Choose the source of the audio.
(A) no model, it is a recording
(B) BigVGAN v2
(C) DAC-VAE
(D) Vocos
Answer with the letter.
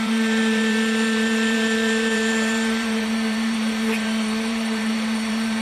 B